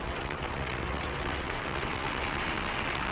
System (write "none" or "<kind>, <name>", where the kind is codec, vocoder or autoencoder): vocoder, WaveNeXt